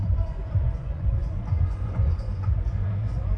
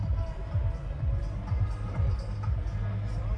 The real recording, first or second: second